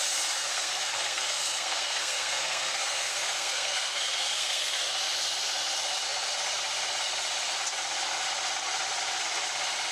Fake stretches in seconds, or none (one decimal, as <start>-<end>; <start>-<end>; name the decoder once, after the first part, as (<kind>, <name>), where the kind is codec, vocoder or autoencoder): 0.4-4.9 (codec, SNAC)

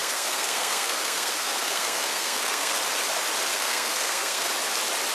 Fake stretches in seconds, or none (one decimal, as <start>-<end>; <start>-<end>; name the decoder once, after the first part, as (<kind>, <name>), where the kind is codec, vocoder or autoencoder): 0.0-2.8 (codec, SNAC); 3.5-4.5

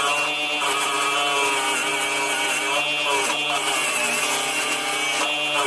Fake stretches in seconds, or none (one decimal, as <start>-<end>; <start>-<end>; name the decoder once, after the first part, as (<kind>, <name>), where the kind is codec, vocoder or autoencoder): none

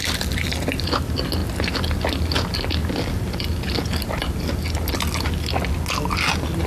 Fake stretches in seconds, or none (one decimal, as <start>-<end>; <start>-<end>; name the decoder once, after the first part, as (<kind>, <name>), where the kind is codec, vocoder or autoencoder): none